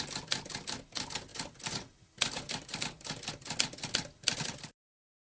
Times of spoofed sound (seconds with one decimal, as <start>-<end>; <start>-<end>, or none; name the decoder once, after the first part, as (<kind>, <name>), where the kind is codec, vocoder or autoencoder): none